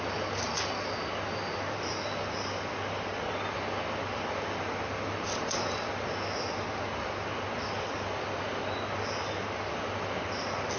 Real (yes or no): yes